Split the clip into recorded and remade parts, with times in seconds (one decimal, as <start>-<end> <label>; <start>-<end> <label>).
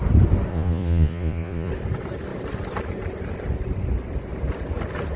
0.0-0.5 recorded; 0.5-1.7 remade; 1.7-5.2 recorded